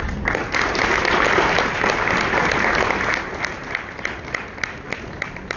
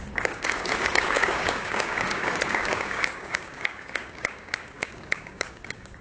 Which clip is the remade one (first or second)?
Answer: second